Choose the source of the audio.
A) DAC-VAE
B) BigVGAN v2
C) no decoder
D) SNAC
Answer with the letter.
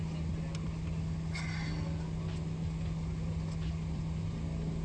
C